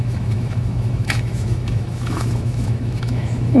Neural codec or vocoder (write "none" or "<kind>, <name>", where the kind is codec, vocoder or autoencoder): autoencoder, DAC-VAE